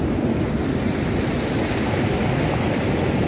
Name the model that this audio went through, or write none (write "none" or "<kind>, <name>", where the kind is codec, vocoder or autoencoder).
none